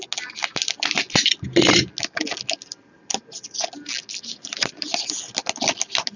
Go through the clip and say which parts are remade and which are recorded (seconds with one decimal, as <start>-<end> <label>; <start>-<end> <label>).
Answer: 0.0-6.2 recorded